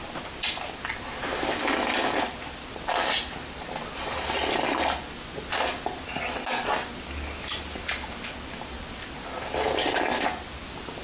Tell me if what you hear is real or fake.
real